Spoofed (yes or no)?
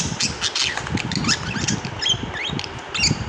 no